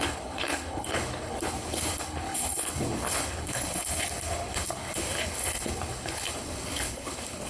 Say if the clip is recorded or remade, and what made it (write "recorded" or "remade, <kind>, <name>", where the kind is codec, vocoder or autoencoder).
remade, codec, HILCodec